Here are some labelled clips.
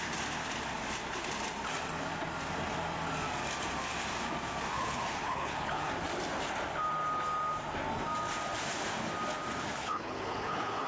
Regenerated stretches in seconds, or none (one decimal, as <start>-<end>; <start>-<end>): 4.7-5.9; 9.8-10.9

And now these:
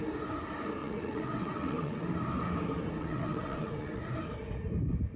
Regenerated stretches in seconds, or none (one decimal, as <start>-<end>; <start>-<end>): 0.8-2.0; 3.0-4.0

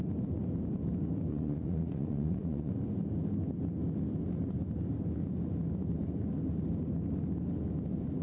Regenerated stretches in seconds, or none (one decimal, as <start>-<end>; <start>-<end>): 1.3-2.7

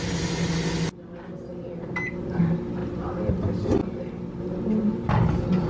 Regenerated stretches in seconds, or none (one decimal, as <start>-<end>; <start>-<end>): 1.5-2.4; 2.8-3.3; 3.8-4.4

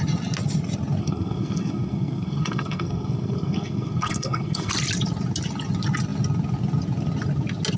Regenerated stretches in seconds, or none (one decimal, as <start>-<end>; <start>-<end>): 1.0-4.7